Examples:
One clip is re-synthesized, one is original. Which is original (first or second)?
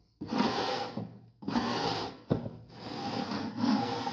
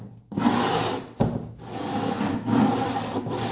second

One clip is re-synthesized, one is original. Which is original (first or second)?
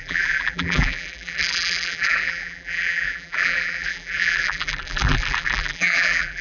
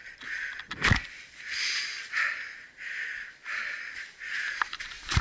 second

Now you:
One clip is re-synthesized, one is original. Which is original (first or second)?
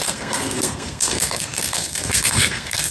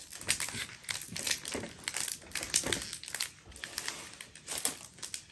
second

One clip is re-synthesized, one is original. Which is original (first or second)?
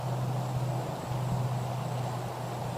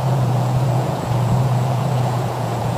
first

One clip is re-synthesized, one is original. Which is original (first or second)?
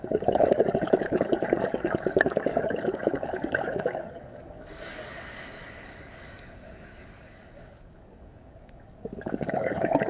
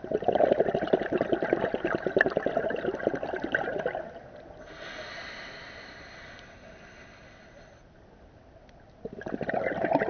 second